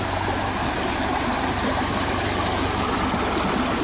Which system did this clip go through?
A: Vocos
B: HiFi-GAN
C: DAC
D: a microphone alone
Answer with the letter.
D